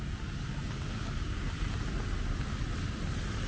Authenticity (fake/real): real